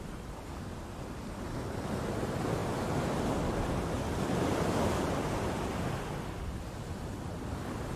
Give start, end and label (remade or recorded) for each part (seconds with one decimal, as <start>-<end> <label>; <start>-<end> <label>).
0.0-8.0 recorded